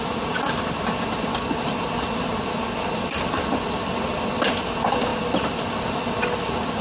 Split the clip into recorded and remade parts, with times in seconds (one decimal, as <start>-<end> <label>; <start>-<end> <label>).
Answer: 0.0-6.8 recorded